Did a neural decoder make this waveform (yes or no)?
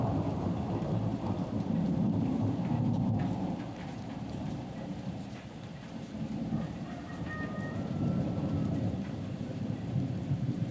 yes